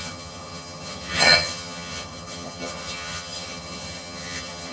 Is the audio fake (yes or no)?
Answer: yes